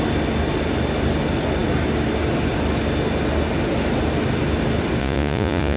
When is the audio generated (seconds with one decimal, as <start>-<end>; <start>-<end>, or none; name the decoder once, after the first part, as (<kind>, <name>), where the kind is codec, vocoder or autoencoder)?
5.0-5.8 (vocoder, Vocos)